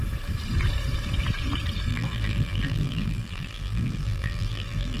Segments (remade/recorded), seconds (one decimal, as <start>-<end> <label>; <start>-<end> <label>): 0.0-1.9 recorded; 1.9-5.0 remade